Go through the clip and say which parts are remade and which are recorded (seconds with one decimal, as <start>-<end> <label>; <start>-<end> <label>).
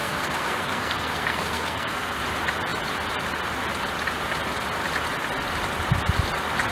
0.0-2.2 remade; 2.2-6.7 recorded